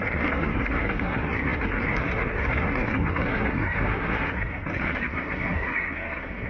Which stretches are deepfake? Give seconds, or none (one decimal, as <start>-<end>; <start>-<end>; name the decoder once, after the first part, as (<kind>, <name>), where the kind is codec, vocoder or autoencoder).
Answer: 0.0-6.5 (codec, SNAC)